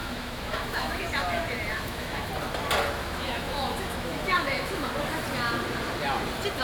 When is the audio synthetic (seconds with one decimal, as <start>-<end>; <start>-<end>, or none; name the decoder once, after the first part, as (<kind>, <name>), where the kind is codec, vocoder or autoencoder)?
0.0-1.0 (autoencoder, DAC-VAE); 1.7-2.3; 3.0-4.9